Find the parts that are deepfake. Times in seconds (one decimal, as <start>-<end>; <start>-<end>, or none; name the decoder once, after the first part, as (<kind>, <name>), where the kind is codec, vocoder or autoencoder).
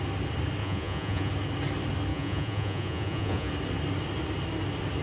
0.6-1.3 (vocoder, Vocos); 2.1-3.5